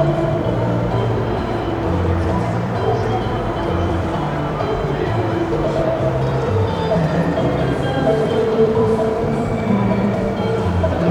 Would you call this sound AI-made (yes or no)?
yes